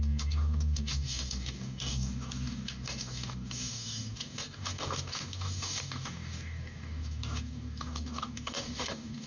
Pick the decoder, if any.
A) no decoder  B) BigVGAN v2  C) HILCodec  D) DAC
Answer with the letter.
D